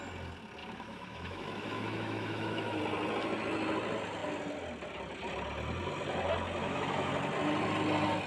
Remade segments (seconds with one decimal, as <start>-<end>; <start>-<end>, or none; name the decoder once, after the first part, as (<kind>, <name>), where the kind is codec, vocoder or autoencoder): 0.6-2.8 (autoencoder, DAC-VAE); 6.6-7.1